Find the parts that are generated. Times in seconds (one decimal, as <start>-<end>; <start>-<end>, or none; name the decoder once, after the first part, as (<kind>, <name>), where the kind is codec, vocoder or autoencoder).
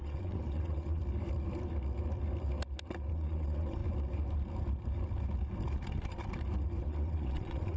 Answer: 0.0-1.0 (vocoder, WaveNeXt); 3.1-3.8; 6.8-7.8